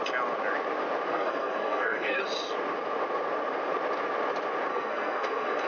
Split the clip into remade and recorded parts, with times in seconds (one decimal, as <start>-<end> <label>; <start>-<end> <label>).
0.0-1.1 recorded; 1.1-2.2 remade; 2.2-4.7 recorded; 4.7-5.7 remade